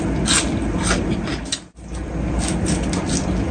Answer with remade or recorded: recorded